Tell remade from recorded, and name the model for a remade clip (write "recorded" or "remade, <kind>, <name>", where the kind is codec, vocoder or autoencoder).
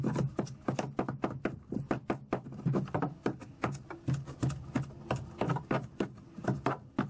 recorded